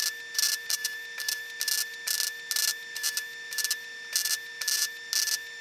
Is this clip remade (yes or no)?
no